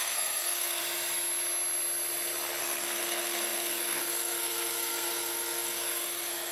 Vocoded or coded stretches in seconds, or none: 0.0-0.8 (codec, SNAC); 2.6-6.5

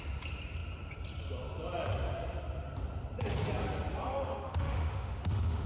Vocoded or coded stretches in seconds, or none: 4.1-5.7 (autoencoder, DAC-VAE)

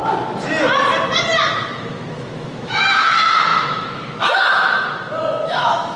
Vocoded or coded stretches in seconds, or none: 1.7-6.0 (autoencoder, DAC-VAE)

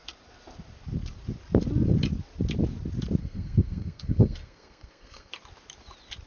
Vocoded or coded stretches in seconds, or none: 3.2-5.3 (codec, SNAC)

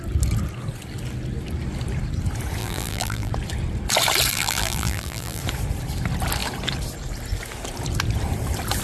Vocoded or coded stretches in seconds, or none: 2.6-3.3 (vocoder, BigVGAN v2); 4.3-5.4

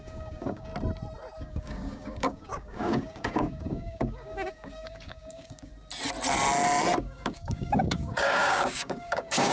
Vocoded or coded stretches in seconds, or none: 0.0-0.7 (codec, DAC); 1.4-5.7; 7.0-9.5